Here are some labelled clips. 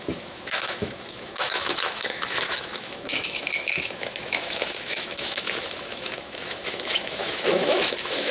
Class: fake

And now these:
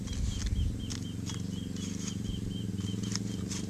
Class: real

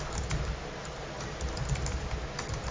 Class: real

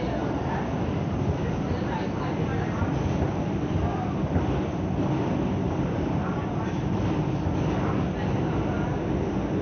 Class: real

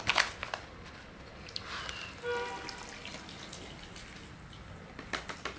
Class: real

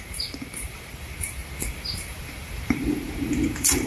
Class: fake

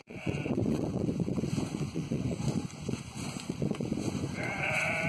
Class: fake